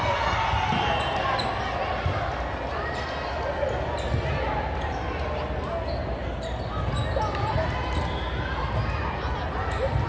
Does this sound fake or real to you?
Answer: real